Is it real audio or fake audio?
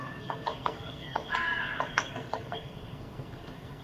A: fake